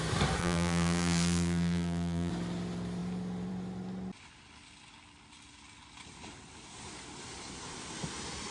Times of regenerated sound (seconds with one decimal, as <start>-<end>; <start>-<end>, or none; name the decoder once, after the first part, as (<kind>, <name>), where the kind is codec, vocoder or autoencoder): 0.4-2.3 (vocoder, BigVGAN v2)